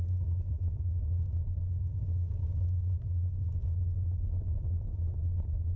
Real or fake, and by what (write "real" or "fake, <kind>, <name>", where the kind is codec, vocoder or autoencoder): real